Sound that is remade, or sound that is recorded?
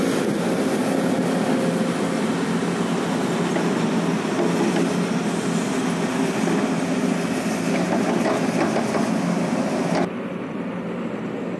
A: recorded